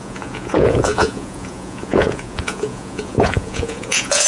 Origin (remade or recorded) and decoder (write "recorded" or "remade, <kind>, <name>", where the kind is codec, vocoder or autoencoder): remade, vocoder, Vocos